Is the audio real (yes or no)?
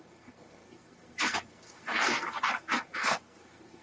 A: no